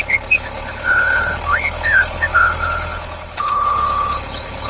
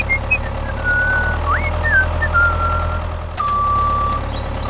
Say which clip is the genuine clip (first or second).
second